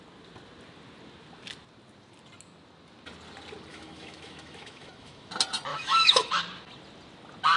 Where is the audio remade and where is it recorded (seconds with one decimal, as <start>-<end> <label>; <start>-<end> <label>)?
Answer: 0.0-3.7 recorded; 3.7-5.3 remade; 5.3-5.7 recorded; 5.7-6.4 remade; 6.4-7.6 recorded